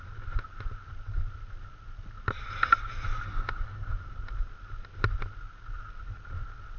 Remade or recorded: recorded